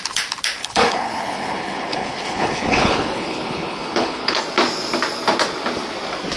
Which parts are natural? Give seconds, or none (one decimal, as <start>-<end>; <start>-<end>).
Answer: 0.0-0.6; 4.4-6.4